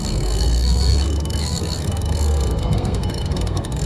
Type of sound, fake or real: fake